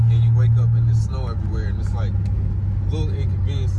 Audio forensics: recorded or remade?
recorded